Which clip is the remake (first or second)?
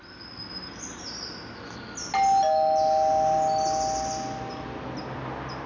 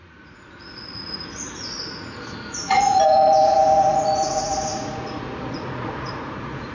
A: second